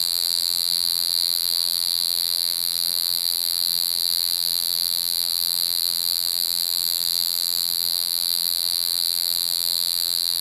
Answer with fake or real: fake